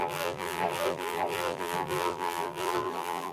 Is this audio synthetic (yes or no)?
yes